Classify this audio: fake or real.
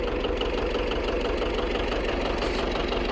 real